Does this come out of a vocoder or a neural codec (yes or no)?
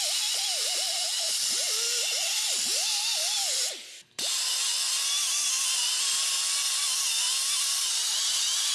no